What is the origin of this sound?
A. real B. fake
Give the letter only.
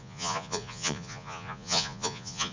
B